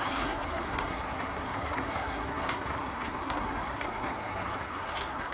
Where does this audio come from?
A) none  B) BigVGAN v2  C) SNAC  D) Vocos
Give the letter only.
C